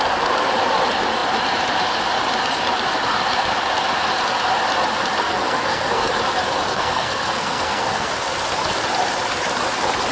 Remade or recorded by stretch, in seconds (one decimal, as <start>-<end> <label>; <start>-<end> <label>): 0.0-5.2 recorded; 5.2-6.1 remade; 6.1-6.7 recorded; 6.7-8.1 remade; 8.1-10.1 recorded